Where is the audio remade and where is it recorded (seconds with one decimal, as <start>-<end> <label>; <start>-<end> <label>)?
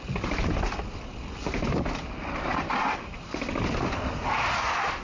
0.0-5.0 recorded